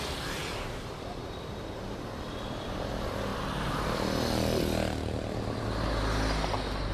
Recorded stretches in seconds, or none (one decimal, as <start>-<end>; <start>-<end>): 0.0-0.4; 2.9-6.9